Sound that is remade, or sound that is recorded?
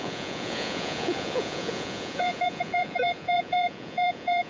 remade